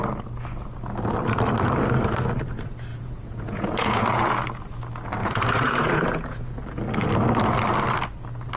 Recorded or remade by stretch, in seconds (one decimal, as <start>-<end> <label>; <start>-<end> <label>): 0.0-2.9 recorded; 2.9-4.3 remade; 4.3-5.2 recorded; 5.2-6.6 remade; 6.6-8.6 recorded